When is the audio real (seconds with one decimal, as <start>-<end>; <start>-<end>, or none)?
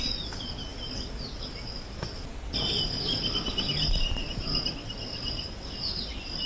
0.0-6.5